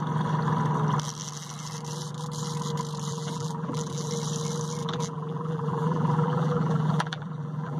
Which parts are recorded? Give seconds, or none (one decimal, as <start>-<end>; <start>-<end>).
0.0-3.1; 4.1-4.8